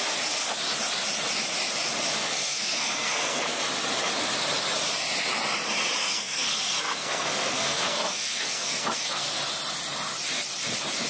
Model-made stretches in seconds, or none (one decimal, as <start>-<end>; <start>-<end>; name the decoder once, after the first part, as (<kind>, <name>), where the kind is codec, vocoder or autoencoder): 2.2-3.6 (codec, SNAC); 6.0-9.4

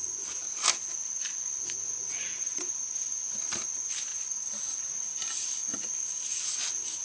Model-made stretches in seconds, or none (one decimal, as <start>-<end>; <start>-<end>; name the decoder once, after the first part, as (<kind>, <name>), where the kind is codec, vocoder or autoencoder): 1.3-2.7 (vocoder, Vocos)

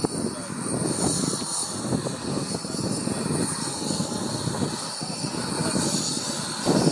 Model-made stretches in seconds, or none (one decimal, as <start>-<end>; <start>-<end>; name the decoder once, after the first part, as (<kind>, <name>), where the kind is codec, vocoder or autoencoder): none

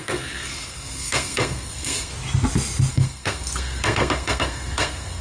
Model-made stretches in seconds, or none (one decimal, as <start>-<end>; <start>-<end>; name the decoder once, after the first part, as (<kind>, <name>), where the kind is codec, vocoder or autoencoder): 0.0-2.1 (codec, SNAC); 2.9-5.2

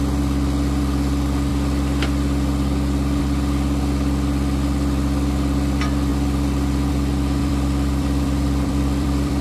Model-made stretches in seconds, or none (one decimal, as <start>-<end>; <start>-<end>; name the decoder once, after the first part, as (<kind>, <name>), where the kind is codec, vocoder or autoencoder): 7.4-9.4 (vocoder, BigVGAN v2)

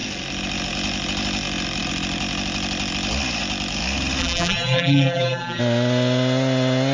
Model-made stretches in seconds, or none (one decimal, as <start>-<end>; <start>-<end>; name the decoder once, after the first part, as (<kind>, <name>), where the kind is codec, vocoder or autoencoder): 4.2-5.6 (vocoder, BigVGAN v2)

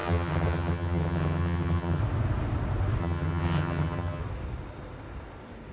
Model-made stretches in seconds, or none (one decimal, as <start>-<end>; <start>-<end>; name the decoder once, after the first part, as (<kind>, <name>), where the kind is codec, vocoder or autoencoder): 0.0-2.0 (vocoder, HiFi-GAN); 3.0-4.2